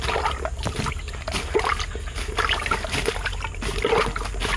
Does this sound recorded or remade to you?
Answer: recorded